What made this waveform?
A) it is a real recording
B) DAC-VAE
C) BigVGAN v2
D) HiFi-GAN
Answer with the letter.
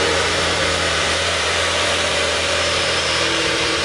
C